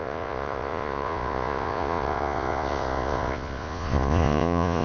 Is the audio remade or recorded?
remade